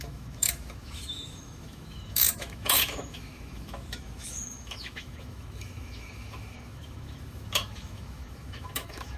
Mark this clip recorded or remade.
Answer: remade